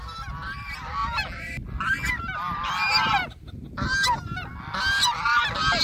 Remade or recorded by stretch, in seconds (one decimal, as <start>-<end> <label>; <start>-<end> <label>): 0.0-5.8 recorded